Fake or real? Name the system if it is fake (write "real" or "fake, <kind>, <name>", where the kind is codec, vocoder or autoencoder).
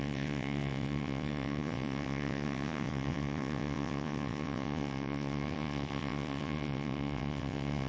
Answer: fake, vocoder, WaveNeXt